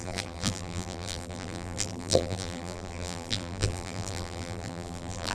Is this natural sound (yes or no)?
no